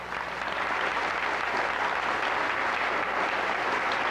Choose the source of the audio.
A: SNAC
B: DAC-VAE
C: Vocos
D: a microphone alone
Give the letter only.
D